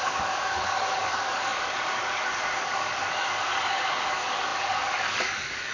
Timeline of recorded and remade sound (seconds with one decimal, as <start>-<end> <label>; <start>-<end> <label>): 0.0-5.7 remade